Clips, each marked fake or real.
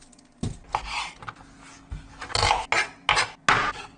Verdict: real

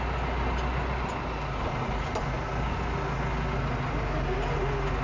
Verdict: real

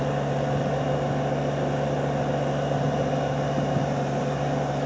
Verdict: real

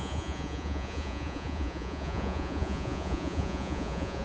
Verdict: fake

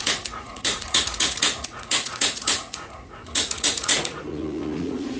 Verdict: fake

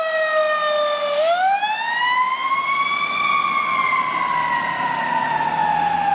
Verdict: real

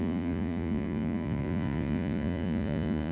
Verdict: fake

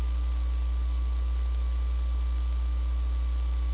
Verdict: real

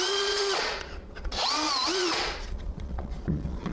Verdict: fake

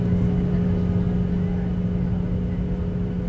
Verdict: real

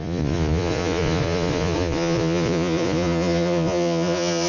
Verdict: fake